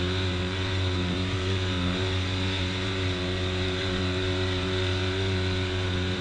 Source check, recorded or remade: remade